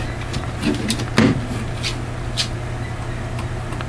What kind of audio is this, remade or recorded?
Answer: recorded